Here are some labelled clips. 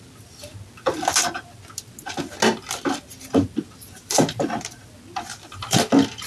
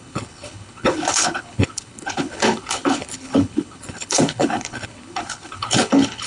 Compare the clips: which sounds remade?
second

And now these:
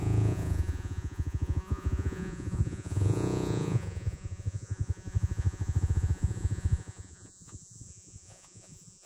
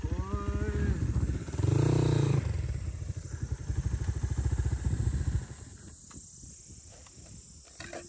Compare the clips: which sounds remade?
first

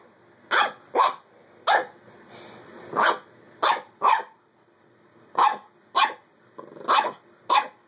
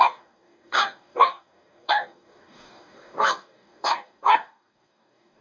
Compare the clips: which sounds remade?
second